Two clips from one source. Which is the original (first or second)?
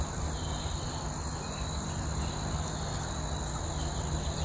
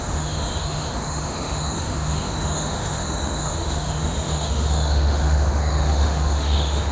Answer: first